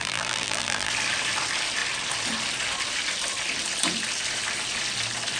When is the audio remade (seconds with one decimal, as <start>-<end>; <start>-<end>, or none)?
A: 0.0-0.9